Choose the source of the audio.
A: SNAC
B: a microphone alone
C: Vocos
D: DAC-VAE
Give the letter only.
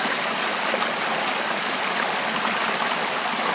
B